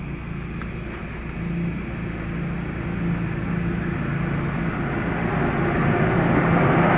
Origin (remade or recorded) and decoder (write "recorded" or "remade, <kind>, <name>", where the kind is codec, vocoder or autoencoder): recorded